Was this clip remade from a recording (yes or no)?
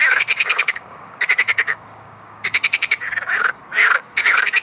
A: yes